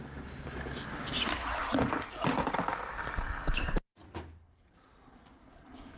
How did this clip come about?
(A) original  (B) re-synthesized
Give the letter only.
A